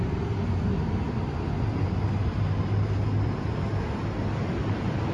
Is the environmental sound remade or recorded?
recorded